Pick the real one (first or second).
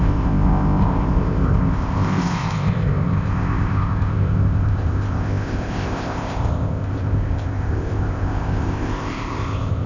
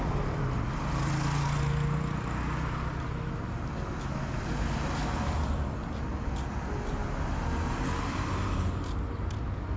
second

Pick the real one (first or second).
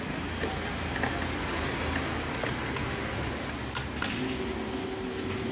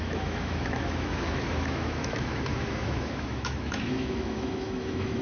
first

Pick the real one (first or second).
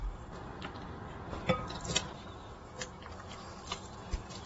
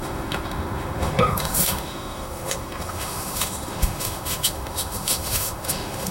first